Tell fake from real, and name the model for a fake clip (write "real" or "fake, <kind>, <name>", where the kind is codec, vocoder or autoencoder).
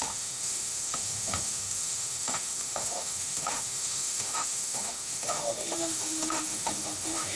fake, autoencoder, DAC-VAE